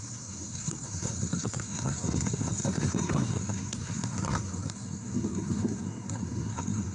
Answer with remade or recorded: remade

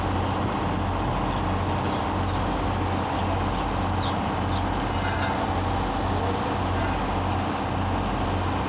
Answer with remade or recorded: recorded